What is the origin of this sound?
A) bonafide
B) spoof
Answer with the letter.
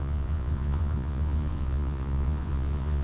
B